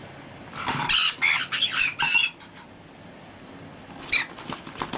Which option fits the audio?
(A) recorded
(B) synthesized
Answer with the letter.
A